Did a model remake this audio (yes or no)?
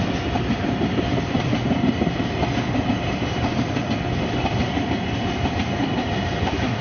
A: no